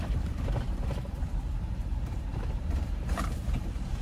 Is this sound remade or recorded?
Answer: remade